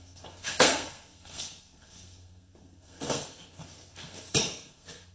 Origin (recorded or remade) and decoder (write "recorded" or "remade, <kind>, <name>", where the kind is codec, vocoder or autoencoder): remade, codec, SNAC